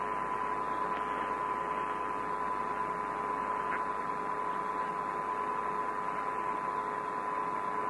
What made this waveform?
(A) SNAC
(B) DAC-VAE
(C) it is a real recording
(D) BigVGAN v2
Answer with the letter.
C